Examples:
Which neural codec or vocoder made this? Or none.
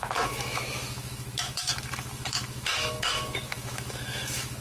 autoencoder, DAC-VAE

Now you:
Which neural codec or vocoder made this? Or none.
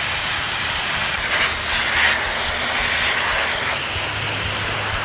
none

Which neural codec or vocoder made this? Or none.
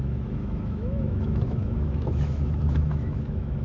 autoencoder, DAC-VAE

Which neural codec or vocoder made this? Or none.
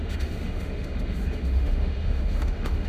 autoencoder, DAC-VAE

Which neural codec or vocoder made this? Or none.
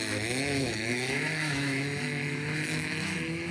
autoencoder, DAC-VAE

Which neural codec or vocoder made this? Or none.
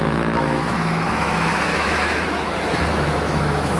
autoencoder, DAC-VAE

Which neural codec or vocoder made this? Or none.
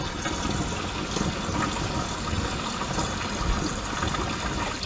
none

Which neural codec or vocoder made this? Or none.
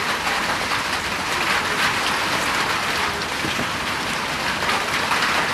none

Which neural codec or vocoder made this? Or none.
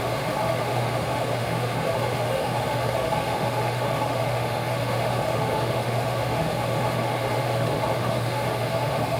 autoencoder, DAC-VAE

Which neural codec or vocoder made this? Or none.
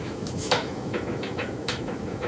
autoencoder, DAC-VAE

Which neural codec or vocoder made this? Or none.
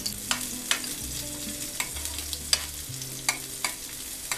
none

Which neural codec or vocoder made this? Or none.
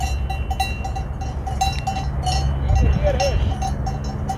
none